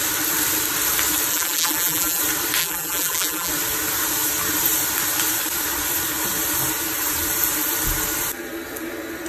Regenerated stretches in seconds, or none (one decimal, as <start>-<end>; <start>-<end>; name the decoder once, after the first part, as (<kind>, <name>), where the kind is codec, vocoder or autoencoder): 1.3-2.2 (vocoder, BigVGAN v2); 2.6-3.5